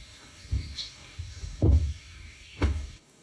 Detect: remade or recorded remade